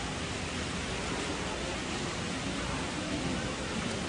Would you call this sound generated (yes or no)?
no